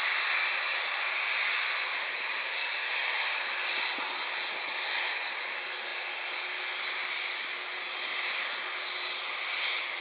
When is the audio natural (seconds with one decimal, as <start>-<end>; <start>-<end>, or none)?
0.0-10.0